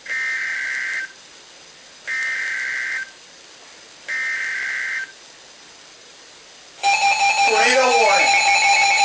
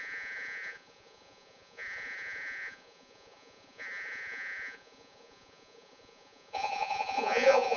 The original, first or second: first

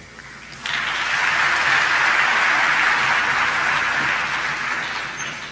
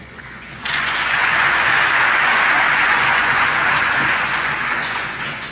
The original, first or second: first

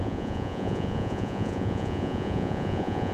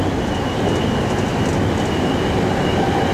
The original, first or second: second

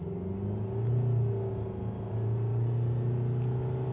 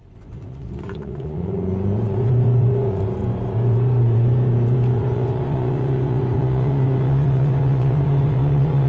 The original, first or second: first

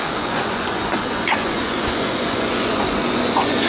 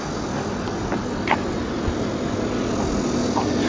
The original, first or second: second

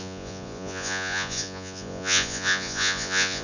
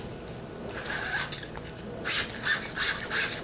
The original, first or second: second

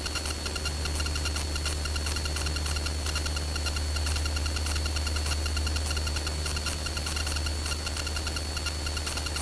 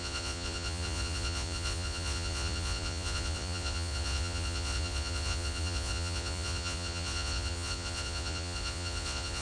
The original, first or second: first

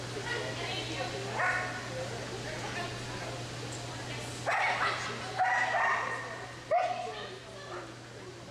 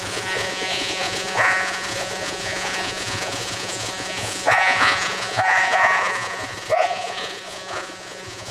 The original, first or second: first